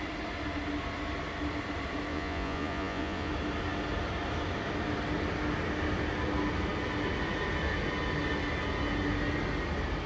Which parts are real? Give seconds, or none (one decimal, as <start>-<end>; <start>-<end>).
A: 0.0-2.1; 3.3-10.1